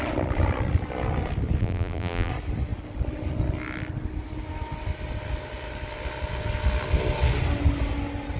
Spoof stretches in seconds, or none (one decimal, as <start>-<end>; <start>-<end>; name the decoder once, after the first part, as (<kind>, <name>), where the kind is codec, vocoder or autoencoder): 1.6-2.3 (vocoder, BigVGAN v2)